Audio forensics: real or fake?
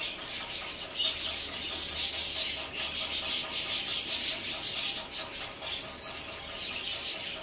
real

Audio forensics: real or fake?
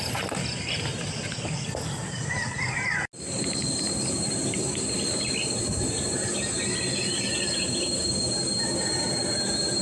real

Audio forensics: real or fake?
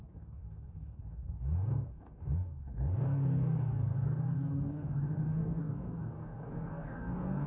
fake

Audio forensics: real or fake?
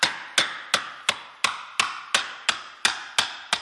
real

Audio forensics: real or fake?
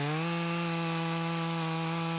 real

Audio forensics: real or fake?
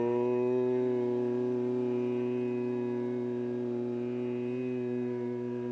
real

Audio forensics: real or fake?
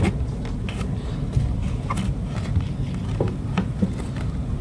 real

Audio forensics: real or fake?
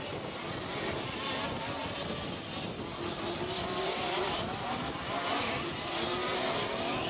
real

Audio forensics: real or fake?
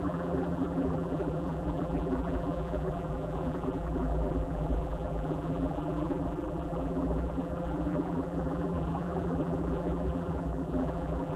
fake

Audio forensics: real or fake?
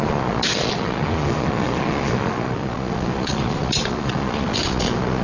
fake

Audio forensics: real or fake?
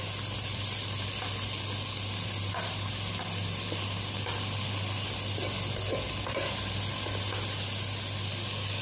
real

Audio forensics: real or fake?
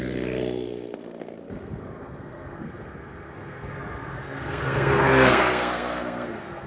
fake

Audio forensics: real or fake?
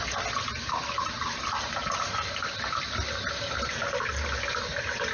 real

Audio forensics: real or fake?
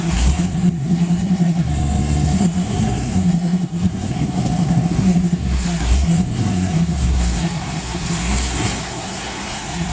fake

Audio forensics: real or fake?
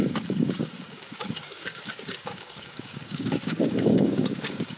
fake